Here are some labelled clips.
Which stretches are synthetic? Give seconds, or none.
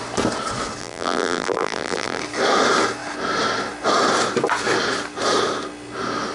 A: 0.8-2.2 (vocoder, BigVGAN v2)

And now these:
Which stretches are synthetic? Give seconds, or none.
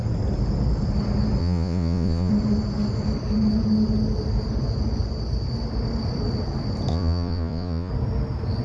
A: 1.4-2.3 (vocoder, Vocos); 6.9-7.9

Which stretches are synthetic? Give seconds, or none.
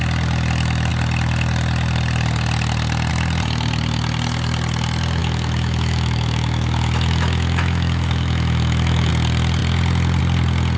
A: 5.2-9.1 (autoencoder, DAC-VAE)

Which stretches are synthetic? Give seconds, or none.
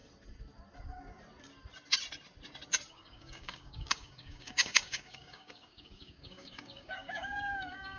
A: 2.9-8.0 (codec, DAC)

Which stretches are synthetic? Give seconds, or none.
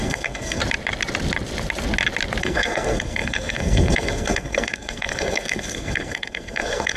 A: 0.0-0.6 (codec, SNAC); 2.4-7.0